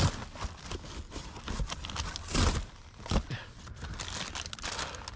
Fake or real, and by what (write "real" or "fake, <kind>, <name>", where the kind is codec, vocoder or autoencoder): real